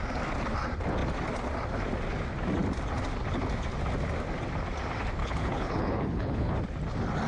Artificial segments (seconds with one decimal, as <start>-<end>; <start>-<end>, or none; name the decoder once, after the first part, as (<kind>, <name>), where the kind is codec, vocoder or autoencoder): 5.2-6.5 (codec, HILCodec)